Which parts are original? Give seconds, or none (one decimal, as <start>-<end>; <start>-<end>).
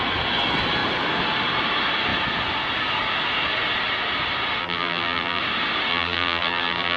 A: 0.0-4.6; 5.4-5.9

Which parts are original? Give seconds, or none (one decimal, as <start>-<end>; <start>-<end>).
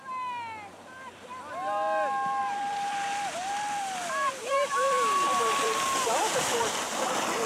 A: 0.0-2.4; 6.5-7.5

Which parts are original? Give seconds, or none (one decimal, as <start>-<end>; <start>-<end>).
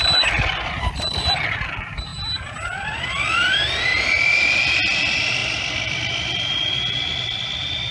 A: 0.0-3.9; 4.6-5.4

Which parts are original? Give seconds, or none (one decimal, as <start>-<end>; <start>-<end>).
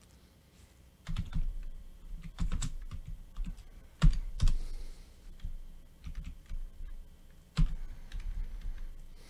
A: 0.0-1.5; 4.8-9.3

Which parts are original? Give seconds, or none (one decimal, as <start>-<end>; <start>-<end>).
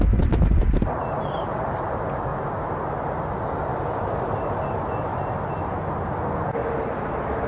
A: 0.0-3.7; 5.2-6.6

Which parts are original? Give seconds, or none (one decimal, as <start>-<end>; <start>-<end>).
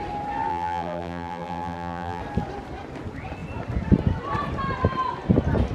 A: 0.0-0.5; 2.2-5.7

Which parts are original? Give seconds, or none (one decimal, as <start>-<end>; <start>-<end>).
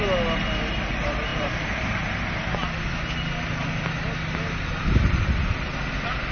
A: 0.0-1.3; 1.9-6.3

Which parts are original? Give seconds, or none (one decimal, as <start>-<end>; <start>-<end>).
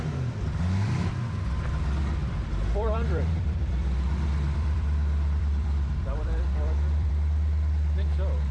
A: 0.0-2.2; 7.1-8.5